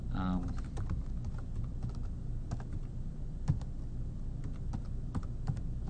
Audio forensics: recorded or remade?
recorded